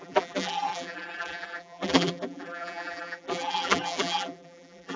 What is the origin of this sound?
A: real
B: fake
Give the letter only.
B